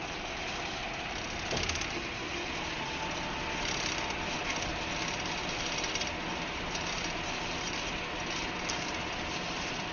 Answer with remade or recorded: recorded